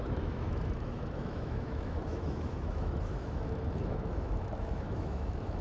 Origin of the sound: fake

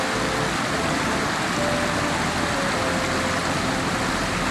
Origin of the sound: real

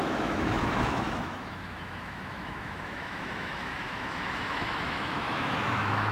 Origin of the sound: fake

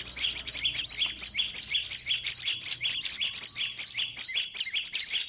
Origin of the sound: real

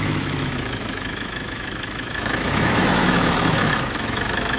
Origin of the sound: fake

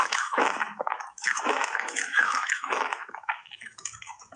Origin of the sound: fake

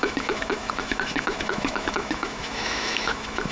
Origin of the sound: fake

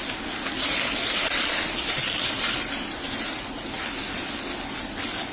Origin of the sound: real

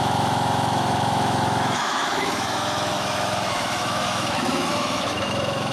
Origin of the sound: fake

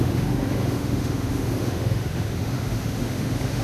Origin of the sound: fake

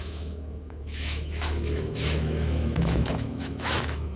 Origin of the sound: fake